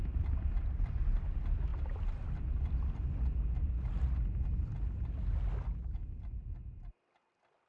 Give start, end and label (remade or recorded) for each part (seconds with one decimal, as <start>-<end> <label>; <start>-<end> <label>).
0.0-1.7 recorded; 1.7-2.2 remade; 2.2-7.7 recorded